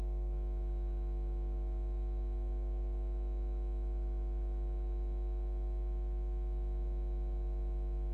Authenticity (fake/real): real